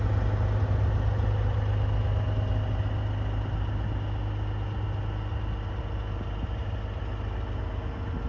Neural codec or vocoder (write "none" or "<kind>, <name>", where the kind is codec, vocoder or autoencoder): none